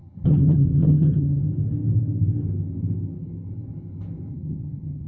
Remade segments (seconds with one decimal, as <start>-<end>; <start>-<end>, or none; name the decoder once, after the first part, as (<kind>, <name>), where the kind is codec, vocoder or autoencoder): 0.0-1.4 (vocoder, HiFi-GAN); 4.3-5.1